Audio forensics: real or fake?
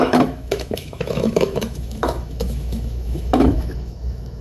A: fake